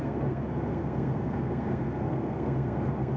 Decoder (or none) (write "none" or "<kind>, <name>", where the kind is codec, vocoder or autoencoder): codec, SNAC